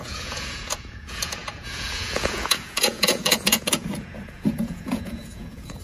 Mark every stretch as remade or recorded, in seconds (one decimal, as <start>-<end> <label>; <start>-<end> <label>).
0.0-5.8 remade